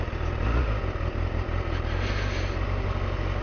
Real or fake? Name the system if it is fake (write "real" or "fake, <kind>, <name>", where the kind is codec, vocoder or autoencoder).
real